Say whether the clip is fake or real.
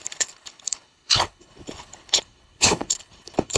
fake